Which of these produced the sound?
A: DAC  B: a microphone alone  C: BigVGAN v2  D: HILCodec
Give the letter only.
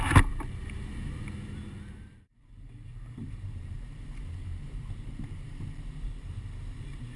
C